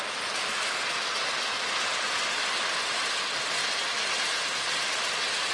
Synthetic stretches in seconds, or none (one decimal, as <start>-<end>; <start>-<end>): none